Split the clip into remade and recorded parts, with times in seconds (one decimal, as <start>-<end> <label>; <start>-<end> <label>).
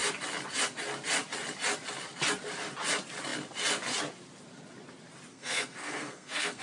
0.0-5.3 recorded; 5.3-6.6 remade